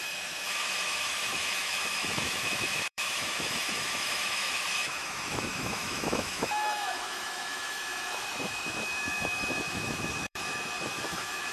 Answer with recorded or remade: remade